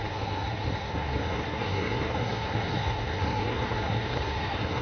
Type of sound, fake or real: fake